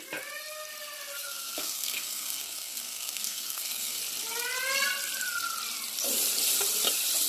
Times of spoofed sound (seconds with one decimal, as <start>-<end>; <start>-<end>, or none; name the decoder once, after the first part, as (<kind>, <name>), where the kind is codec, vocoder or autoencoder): 1.2-4.0 (codec, SNAC)